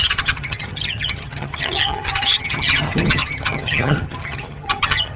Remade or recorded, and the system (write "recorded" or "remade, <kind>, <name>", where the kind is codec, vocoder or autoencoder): remade, vocoder, HiFi-GAN